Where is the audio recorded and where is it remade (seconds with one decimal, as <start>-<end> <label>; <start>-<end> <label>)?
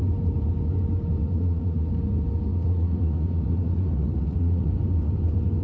0.0-1.2 recorded; 1.2-1.9 remade; 1.9-2.5 recorded; 2.5-4.7 remade; 4.7-5.6 recorded